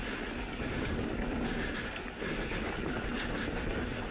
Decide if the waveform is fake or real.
real